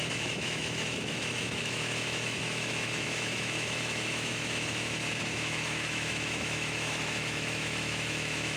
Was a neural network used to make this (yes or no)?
yes